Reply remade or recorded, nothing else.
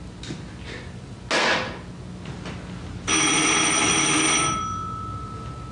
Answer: recorded